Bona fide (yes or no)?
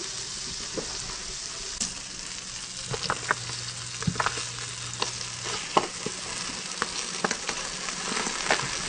yes